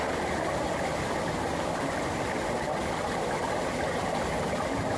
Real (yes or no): yes